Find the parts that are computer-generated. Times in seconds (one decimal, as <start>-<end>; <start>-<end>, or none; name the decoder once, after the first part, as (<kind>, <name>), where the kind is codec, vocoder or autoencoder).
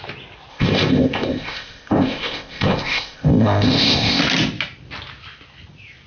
0.5-4.2 (codec, ZipCodec)